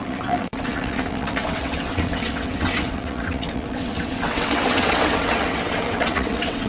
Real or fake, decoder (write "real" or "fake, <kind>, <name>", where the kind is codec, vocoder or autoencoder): fake, vocoder, WaveNeXt